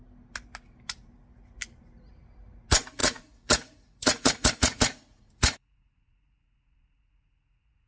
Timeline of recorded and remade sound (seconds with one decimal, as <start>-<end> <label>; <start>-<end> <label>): 0.0-3.0 recorded; 3.0-7.9 remade